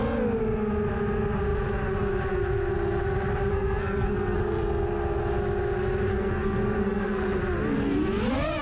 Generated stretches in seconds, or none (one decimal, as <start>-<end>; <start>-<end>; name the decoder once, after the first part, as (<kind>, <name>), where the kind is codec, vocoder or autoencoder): 3.5-4.4 (codec, SNAC); 6.1-7.4